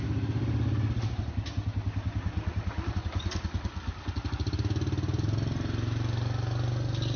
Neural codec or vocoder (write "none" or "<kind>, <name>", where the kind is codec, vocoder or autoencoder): none